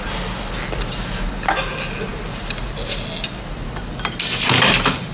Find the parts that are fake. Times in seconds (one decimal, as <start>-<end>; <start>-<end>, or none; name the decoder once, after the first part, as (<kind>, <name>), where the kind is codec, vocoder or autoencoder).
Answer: none

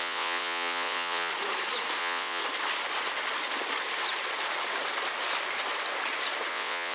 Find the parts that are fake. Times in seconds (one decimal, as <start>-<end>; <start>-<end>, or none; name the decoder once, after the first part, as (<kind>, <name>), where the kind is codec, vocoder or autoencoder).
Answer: 0.0-1.3 (vocoder, WaveNeXt); 2.0-2.4; 6.5-6.9

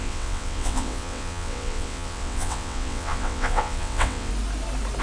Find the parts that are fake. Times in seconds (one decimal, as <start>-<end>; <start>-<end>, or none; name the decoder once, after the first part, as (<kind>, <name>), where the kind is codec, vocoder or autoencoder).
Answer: 0.0-4.3 (vocoder, WaveNeXt)